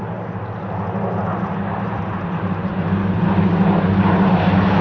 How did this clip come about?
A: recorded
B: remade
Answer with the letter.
A